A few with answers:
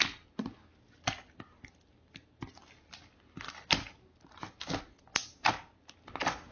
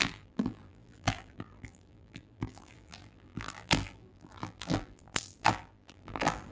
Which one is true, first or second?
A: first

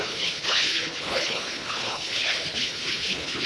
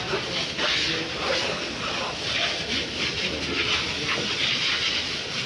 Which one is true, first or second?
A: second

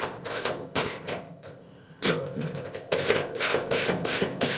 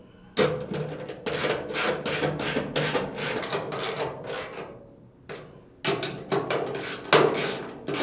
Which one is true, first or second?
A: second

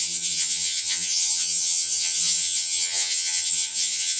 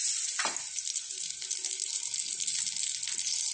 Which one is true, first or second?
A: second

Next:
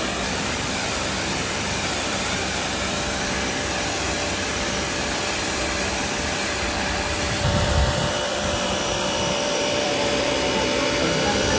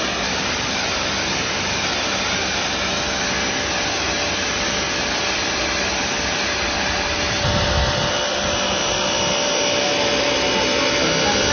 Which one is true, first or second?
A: second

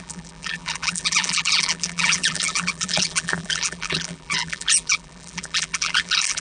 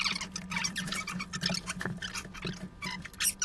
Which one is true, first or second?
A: second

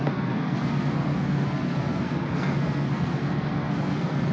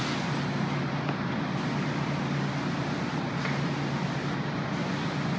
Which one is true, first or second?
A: second